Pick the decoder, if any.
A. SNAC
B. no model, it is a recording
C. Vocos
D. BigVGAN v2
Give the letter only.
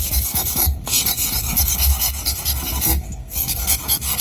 A